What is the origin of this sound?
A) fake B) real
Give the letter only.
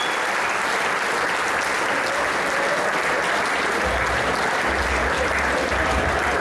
B